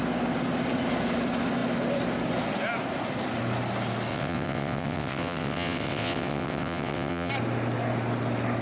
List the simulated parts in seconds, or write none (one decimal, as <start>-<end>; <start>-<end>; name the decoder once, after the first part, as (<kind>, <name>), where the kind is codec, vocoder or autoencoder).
4.1-7.3 (vocoder, WaveNeXt)